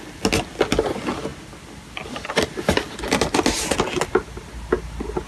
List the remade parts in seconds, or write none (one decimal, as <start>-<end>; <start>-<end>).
none